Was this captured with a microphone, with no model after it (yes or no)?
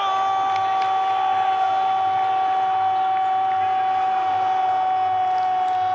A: yes